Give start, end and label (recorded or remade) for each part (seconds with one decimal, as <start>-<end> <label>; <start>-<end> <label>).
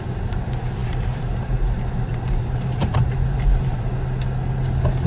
0.0-0.8 recorded; 0.8-3.9 remade; 3.9-5.1 recorded